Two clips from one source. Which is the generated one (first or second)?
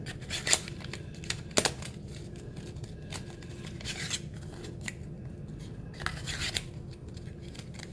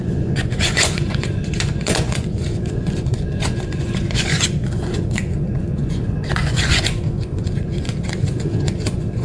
second